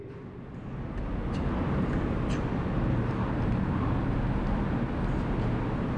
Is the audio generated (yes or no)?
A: no